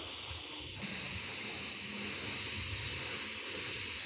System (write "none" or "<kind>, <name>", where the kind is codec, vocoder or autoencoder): none